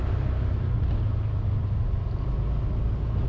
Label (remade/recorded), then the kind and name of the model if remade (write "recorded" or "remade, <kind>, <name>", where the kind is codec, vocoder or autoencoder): recorded